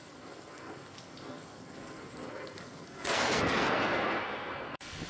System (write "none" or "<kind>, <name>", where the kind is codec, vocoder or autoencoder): codec, SNAC